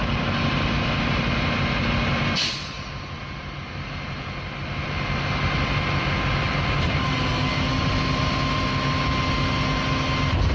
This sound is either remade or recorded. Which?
recorded